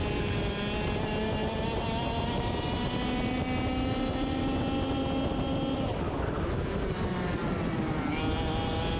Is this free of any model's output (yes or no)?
yes